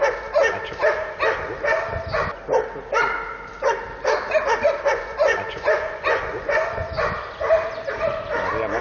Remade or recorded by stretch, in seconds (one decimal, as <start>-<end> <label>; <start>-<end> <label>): 0.0-4.9 recorded; 4.9-7.3 remade; 7.3-8.8 recorded